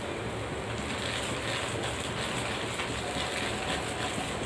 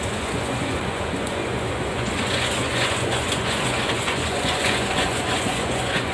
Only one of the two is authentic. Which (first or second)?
first